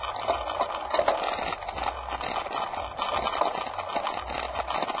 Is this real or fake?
real